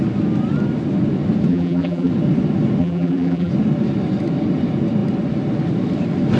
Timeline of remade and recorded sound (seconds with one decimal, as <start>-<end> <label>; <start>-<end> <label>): 0.0-1.5 recorded; 1.5-2.1 remade; 2.1-2.8 recorded; 2.8-3.5 remade; 3.5-6.4 recorded